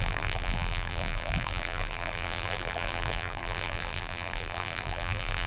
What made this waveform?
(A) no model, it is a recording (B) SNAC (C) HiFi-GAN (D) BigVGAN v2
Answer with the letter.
D